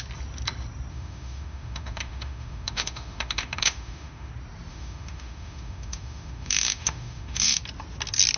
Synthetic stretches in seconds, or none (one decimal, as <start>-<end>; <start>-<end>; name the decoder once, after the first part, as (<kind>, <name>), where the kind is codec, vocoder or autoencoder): 0.9-4.3 (autoencoder, DAC-VAE); 4.7-7.6